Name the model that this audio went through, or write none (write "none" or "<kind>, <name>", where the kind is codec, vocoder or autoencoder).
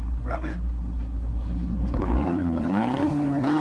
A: codec, SNAC